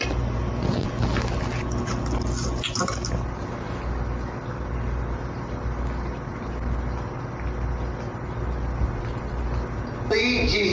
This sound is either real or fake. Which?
real